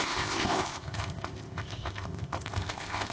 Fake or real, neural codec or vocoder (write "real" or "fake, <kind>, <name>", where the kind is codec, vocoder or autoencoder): fake, codec, ZipCodec